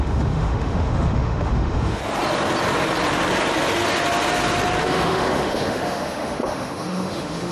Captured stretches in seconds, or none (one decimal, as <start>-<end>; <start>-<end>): 2.0-4.8